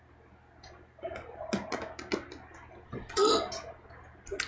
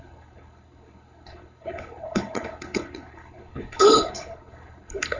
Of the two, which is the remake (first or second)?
second